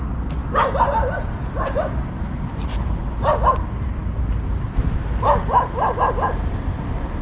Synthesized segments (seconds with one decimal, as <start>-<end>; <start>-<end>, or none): none